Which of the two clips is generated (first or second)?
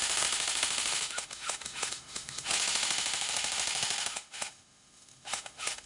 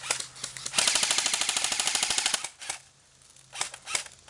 first